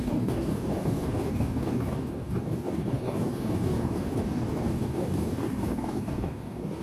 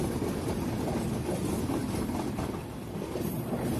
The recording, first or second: second